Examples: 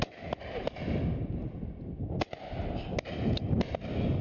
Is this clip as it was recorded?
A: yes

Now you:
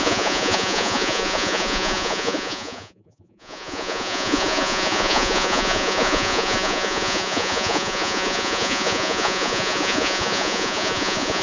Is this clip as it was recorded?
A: no